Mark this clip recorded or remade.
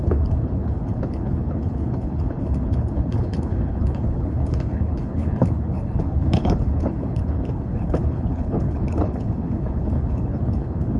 remade